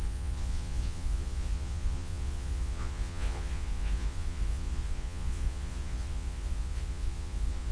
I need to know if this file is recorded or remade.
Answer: remade